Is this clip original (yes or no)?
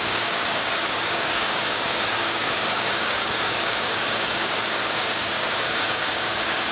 no